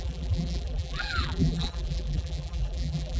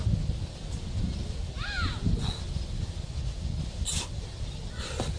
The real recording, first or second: second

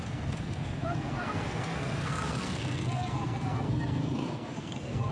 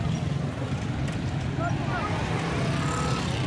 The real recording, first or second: second